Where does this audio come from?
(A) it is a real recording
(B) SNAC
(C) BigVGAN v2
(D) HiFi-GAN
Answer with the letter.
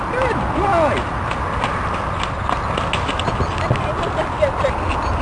A